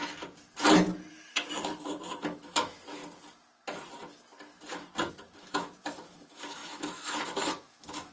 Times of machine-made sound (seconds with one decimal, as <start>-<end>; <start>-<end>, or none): 1.1-3.0; 5.1-8.1